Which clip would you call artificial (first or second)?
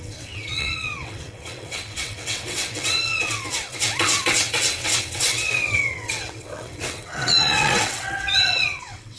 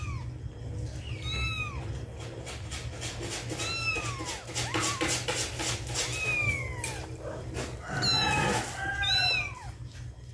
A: first